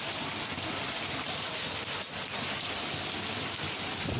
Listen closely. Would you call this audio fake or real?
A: real